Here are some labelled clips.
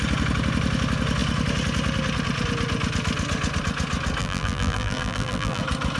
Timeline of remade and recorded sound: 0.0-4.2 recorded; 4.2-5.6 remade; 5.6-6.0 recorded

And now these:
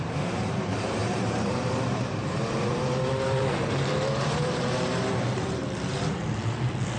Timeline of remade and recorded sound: 0.0-6.2 remade; 6.2-7.0 recorded

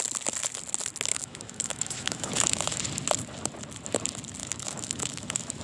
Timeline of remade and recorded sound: 0.0-1.1 recorded; 1.1-2.8 remade; 2.8-4.4 recorded; 4.4-5.6 remade